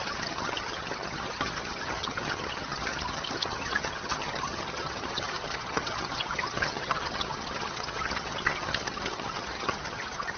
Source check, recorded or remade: remade